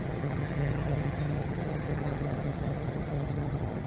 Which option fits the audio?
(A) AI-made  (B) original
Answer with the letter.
A